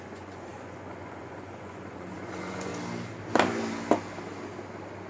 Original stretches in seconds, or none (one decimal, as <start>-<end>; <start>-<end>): 2.7-5.1